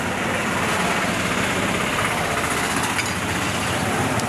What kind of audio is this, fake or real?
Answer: real